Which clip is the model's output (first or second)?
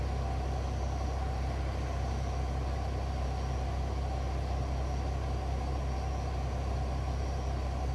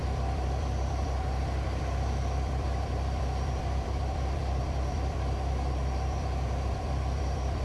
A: second